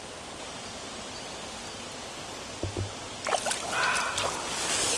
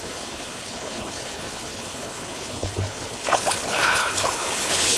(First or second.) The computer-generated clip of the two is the second